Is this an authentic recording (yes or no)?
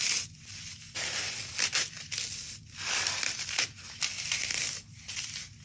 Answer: yes